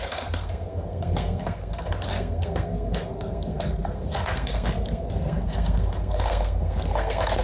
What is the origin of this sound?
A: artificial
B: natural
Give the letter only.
A